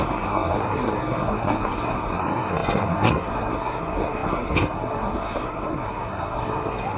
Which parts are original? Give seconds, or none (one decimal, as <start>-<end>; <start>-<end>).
none